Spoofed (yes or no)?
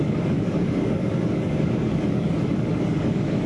yes